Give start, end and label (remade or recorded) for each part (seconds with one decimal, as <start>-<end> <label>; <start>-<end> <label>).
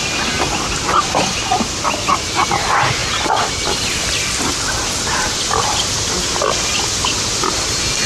0.0-8.1 recorded